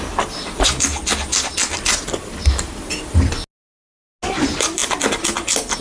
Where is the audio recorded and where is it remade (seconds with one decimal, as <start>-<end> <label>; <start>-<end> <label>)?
0.0-5.8 recorded